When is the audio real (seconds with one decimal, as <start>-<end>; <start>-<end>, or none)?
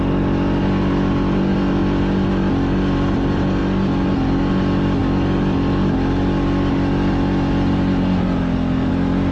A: 0.0-9.3